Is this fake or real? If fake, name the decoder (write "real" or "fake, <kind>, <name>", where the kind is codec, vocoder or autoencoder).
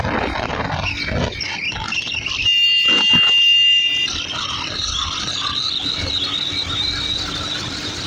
real